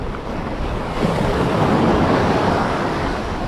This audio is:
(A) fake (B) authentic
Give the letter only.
A